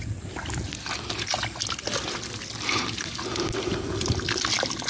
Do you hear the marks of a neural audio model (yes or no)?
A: no